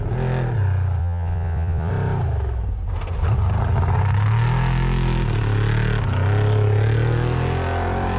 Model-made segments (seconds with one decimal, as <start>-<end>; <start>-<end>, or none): 1.0-1.9